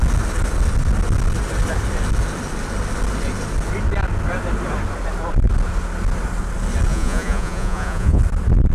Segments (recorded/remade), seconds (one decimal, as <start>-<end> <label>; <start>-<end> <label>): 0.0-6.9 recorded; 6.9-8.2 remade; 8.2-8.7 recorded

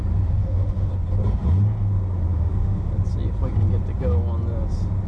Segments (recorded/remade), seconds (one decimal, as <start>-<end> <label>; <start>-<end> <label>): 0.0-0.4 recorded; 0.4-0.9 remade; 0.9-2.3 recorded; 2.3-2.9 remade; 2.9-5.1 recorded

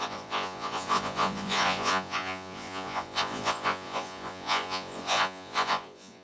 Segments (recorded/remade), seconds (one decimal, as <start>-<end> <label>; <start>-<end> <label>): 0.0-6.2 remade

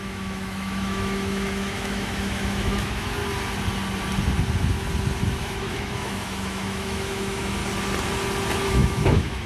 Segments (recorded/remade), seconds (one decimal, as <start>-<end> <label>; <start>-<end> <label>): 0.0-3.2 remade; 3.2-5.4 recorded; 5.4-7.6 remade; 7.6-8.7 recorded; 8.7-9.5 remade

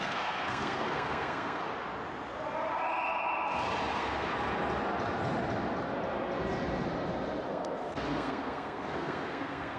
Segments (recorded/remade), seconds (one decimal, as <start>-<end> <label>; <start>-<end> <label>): 0.0-1.6 remade; 1.6-3.9 recorded; 3.9-4.3 remade; 4.3-7.5 recorded; 7.5-9.8 remade

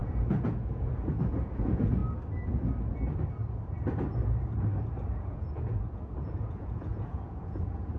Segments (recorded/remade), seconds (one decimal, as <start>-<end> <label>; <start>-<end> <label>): 0.0-2.0 remade; 2.0-5.1 recorded; 5.1-8.0 remade